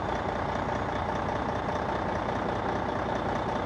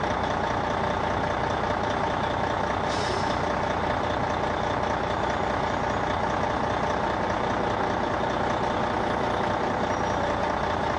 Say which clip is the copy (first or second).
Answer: first